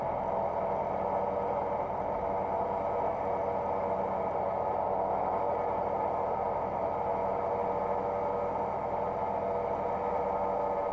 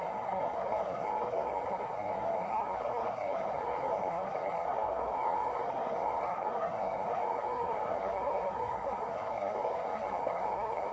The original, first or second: first